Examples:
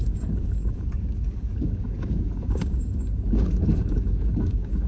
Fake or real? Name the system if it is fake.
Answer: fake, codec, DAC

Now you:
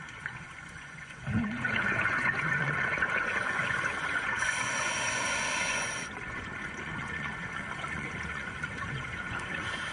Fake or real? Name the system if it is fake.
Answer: fake, vocoder, Vocos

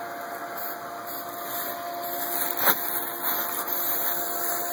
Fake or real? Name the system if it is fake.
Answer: real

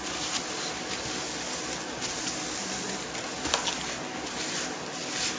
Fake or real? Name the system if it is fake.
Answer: real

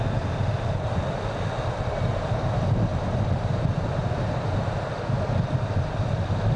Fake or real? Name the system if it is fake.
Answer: real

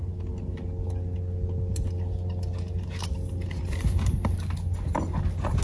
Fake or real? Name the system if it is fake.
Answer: real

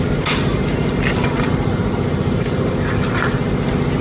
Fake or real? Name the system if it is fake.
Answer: real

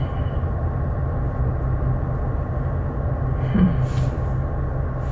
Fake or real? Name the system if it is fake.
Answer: real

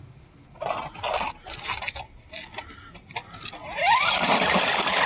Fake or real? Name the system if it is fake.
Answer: real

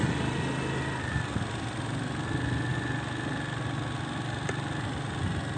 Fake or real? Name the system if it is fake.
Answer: real